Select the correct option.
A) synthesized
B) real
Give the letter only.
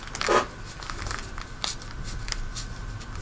B